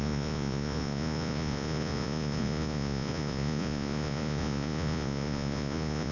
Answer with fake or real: fake